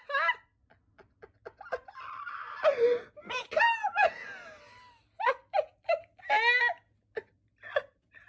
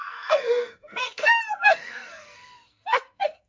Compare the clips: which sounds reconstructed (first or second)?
second